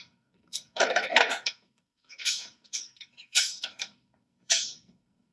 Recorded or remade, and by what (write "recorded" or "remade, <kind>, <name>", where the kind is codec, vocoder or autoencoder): remade, codec, SNAC